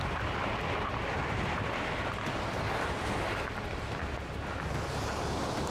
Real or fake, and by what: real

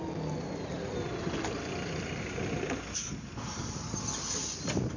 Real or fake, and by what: real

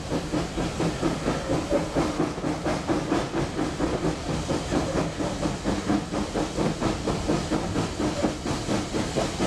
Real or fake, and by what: real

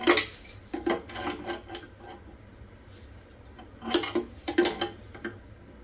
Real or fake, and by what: real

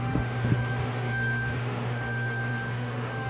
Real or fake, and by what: fake, autoencoder, DAC-VAE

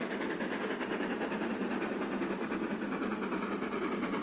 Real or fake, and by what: real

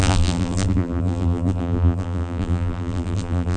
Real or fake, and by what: fake, vocoder, BigVGAN v2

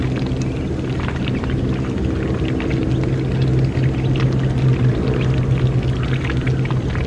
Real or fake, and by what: real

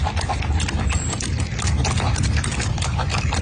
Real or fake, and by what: real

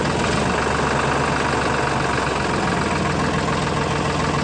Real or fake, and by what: real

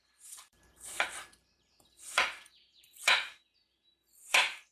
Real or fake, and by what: fake, vocoder, BigVGAN v2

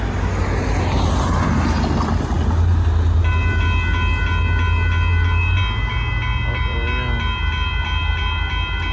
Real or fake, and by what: real